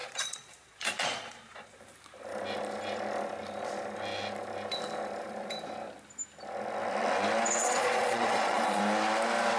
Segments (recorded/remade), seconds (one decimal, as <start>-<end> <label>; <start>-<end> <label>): 0.0-1.8 remade; 1.8-7.6 recorded; 7.6-8.8 remade; 8.8-9.6 recorded